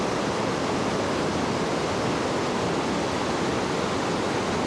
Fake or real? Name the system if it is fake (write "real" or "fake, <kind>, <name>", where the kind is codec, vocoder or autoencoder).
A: real